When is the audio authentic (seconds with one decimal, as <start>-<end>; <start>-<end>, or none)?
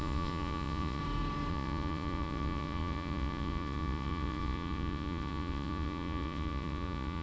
1.0-1.5